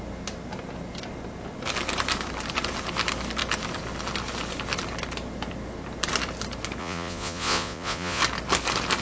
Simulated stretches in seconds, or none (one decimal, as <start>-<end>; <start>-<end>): 6.8-8.2